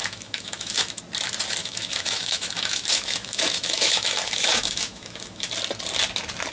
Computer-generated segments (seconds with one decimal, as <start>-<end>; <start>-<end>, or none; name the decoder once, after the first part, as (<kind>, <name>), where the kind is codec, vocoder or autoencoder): 0.0-1.0 (autoencoder, DAC-VAE); 1.6-5.5